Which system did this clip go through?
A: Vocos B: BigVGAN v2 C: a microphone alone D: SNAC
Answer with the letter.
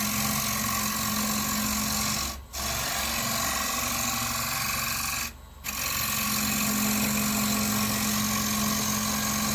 C